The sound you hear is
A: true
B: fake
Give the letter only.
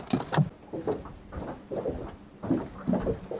A